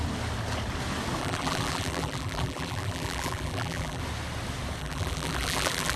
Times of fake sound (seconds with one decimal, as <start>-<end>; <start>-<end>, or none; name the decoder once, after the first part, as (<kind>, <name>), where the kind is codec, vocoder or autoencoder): 1.2-4.0 (vocoder, BigVGAN v2); 4.8-6.0